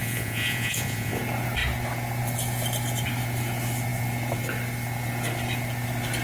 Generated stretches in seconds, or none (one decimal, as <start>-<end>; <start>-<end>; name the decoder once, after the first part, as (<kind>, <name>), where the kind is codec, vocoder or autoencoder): 0.0-1.2 (vocoder, Vocos)